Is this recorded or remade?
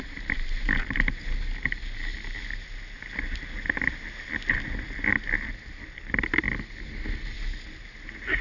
recorded